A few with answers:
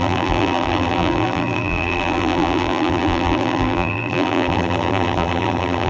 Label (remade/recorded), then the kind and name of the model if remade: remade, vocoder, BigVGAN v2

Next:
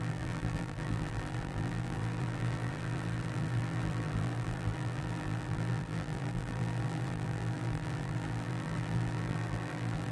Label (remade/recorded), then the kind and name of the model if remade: remade, vocoder, BigVGAN v2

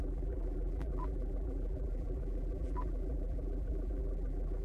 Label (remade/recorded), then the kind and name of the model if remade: remade, vocoder, BigVGAN v2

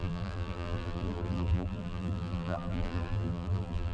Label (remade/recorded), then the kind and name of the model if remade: remade, vocoder, BigVGAN v2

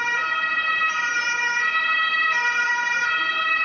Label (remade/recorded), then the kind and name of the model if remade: recorded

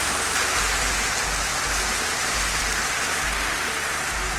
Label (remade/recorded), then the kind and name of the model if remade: recorded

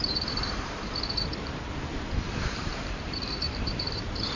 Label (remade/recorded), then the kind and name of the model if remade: remade, vocoder, BigVGAN v2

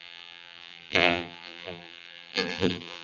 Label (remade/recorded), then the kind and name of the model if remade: remade, vocoder, BigVGAN v2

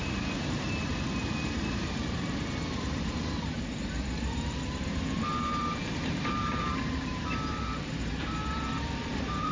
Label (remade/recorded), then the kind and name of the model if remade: remade, vocoder, BigVGAN v2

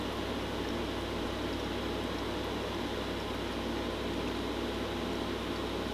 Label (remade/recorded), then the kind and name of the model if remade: recorded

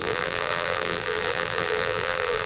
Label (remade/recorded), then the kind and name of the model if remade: remade, vocoder, BigVGAN v2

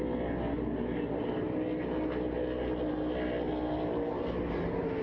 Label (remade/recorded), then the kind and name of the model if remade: recorded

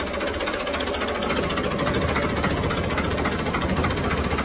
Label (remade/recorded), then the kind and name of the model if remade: recorded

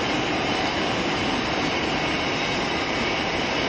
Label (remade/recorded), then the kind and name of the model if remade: remade, vocoder, BigVGAN v2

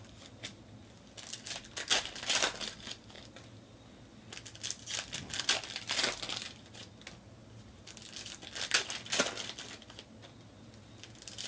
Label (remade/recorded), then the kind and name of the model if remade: recorded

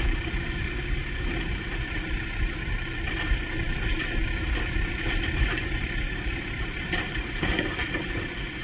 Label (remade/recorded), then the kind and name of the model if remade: remade, vocoder, BigVGAN v2